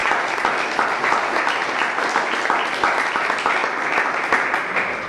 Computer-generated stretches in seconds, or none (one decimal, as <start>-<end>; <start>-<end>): none